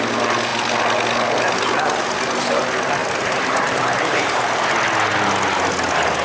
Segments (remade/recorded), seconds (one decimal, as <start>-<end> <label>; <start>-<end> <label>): 0.0-3.0 recorded; 3.0-4.6 remade; 4.6-6.2 recorded